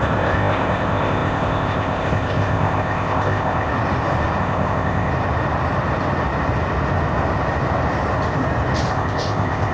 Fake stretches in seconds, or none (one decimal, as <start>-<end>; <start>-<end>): 0.0-3.7; 4.4-5.1; 8.9-9.7